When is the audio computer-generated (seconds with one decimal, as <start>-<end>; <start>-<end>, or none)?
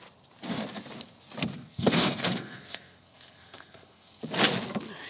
1.5-4.2